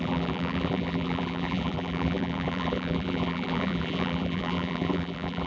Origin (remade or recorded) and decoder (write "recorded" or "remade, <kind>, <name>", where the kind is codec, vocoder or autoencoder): remade, vocoder, BigVGAN v2